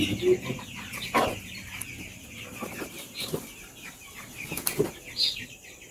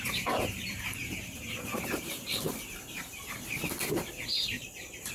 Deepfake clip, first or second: second